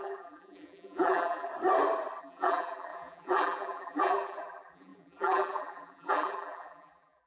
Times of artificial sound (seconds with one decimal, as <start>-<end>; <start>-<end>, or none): 0.0-1.5; 2.2-7.3